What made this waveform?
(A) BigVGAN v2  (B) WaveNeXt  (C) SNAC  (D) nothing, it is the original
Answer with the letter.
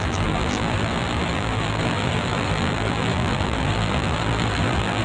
A